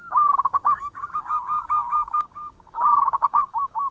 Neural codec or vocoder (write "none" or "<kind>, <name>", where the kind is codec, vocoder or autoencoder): codec, DAC